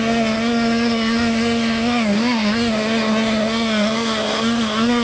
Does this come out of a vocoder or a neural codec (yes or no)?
yes